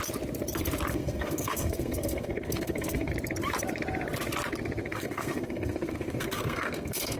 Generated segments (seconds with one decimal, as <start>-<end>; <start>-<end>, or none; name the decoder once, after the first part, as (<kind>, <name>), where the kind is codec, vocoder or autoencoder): 0.9-3.1 (codec, SNAC); 4.8-7.2